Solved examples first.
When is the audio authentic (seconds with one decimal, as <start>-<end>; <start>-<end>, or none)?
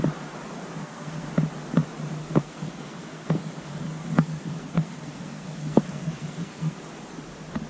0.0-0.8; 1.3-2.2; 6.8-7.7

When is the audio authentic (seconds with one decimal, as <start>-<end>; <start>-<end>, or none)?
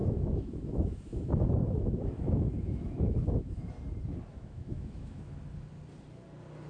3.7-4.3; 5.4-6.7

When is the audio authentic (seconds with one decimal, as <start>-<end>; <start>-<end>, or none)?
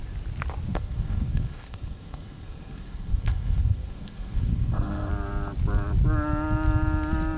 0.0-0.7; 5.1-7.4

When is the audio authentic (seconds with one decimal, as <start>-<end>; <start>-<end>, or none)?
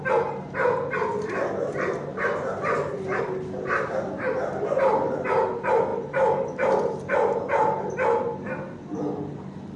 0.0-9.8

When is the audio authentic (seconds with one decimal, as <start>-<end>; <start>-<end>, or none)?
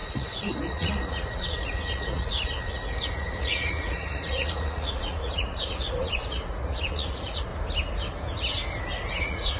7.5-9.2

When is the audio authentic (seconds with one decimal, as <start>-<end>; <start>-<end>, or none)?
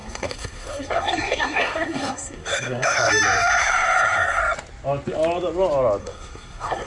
3.1-3.6; 4.4-6.0